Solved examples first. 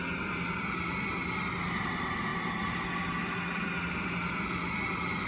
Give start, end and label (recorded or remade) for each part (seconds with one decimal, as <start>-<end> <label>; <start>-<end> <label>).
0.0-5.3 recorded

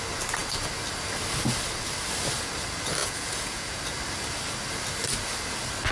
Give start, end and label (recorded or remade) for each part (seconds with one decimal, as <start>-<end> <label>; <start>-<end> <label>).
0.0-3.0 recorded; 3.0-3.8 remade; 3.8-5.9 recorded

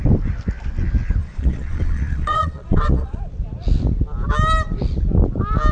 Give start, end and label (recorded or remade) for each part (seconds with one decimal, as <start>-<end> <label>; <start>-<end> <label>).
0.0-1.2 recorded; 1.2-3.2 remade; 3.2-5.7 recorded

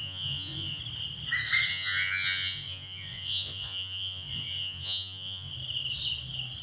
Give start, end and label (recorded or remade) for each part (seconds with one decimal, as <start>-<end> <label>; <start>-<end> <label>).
0.0-0.8 remade; 0.8-1.7 recorded; 1.7-5.5 remade; 5.5-6.6 recorded

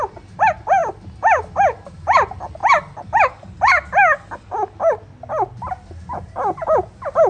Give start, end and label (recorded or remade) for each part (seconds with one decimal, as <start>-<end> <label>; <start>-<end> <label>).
0.0-7.3 recorded